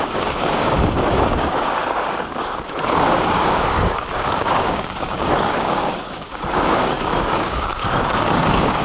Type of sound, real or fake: fake